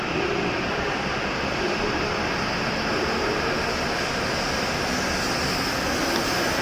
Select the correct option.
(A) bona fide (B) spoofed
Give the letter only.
A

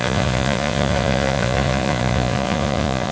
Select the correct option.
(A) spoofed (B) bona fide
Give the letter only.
A